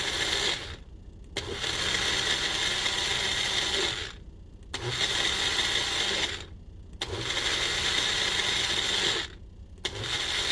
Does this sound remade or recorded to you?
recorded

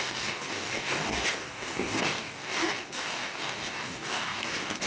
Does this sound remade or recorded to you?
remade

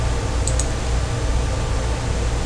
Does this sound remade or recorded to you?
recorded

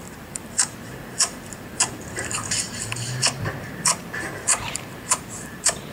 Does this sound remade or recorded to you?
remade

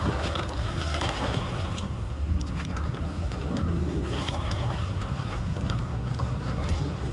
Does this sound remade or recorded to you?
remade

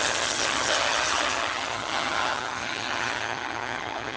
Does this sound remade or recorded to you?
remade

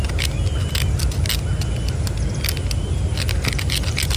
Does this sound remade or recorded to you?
recorded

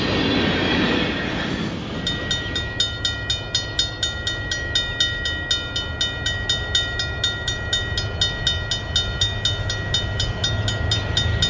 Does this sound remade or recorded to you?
recorded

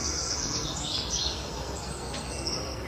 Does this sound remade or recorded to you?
remade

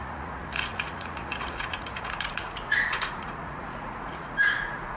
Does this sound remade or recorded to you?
remade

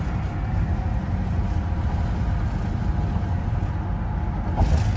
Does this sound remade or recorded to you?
recorded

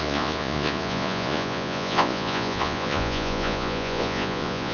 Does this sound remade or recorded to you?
remade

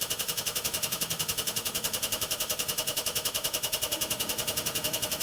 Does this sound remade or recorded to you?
remade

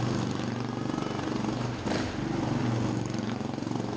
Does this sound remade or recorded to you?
recorded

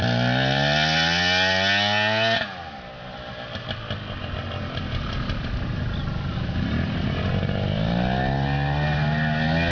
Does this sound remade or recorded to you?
recorded